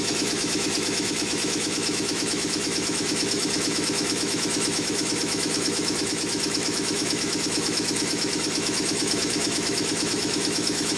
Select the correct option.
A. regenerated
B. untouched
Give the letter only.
A